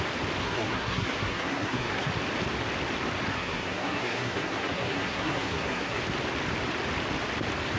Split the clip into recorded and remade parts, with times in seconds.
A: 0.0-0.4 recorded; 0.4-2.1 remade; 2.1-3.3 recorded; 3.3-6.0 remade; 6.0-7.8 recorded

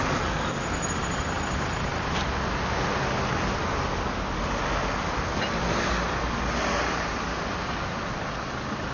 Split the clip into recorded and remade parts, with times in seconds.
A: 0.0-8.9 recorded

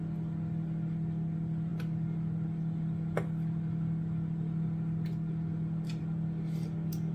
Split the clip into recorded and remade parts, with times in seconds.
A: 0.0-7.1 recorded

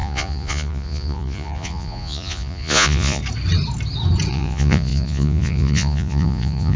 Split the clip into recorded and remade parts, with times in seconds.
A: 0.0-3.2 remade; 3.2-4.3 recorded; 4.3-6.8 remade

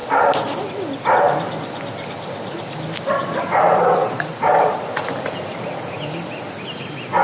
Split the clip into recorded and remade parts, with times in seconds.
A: 0.0-7.2 recorded

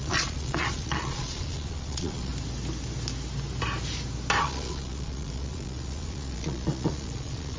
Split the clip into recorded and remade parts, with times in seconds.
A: 0.0-2.3 remade; 2.3-4.4 recorded; 4.4-7.6 remade